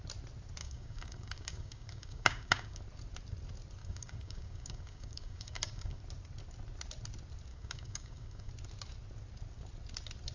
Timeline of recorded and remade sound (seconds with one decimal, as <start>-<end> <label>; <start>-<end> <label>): 0.0-0.6 recorded; 0.6-2.8 remade; 2.8-3.8 recorded; 3.8-6.0 remade; 6.0-7.5 recorded; 7.5-8.5 remade; 8.5-10.3 recorded